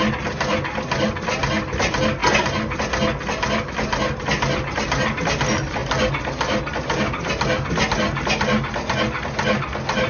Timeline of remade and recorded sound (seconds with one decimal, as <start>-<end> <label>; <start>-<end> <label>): 0.0-10.1 recorded